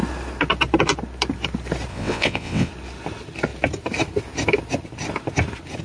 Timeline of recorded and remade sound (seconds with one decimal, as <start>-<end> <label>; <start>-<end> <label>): 0.0-1.9 recorded; 1.9-2.7 remade; 2.7-5.8 recorded